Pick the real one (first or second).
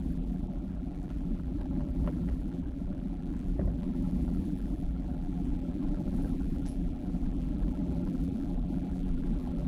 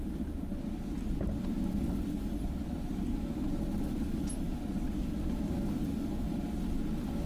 second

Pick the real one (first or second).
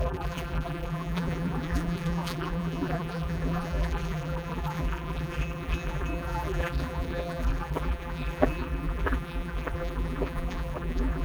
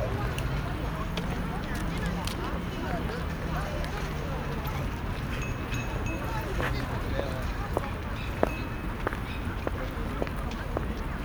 second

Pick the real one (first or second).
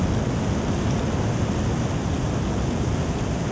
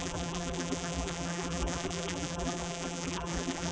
first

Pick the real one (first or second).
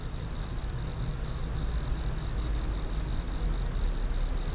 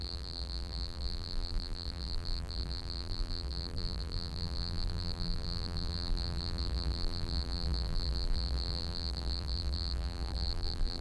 first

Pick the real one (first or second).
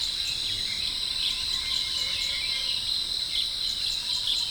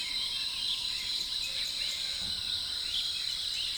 first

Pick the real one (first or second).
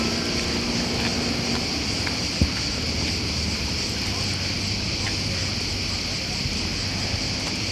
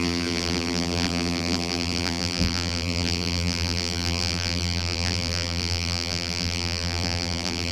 first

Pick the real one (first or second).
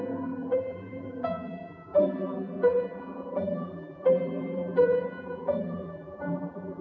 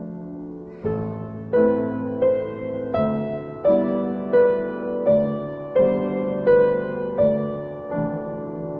second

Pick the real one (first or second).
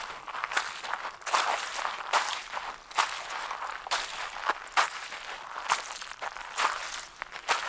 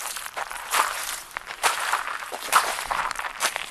first